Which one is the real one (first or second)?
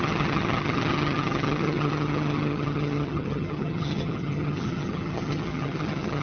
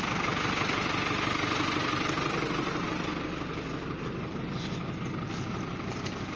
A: second